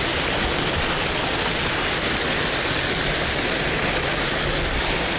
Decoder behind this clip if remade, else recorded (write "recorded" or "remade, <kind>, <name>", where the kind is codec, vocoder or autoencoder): recorded